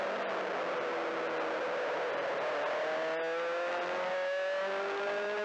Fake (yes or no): no